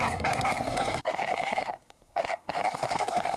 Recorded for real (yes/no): no